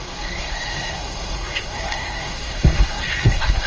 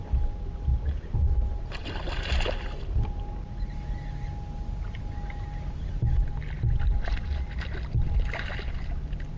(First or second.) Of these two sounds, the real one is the second